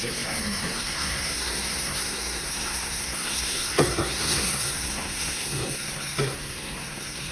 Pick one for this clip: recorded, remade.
remade